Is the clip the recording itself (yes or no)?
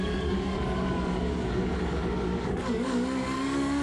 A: no